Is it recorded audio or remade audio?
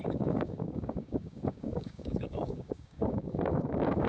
remade